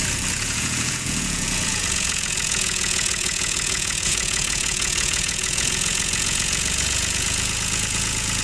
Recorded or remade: remade